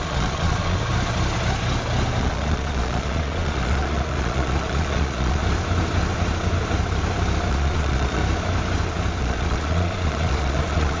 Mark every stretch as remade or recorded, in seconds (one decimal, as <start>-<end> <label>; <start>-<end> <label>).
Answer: 0.0-0.8 remade; 0.8-2.2 recorded; 2.2-5.4 remade; 5.4-7.5 recorded; 7.5-8.2 remade; 8.2-9.2 recorded; 9.2-11.0 remade